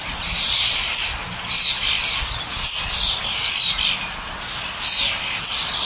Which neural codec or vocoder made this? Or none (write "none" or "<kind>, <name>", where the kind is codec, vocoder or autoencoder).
none